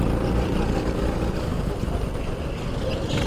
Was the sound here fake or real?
real